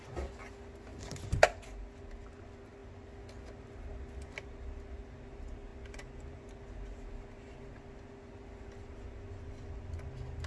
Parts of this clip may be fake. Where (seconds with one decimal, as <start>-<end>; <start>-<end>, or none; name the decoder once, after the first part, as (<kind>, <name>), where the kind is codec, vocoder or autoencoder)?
none